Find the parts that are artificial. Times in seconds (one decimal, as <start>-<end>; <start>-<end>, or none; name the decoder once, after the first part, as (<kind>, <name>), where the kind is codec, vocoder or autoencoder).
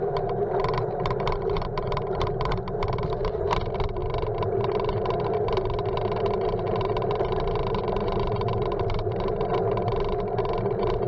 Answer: none